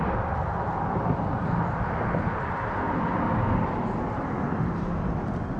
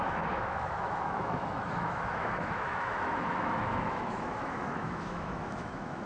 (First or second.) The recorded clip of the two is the first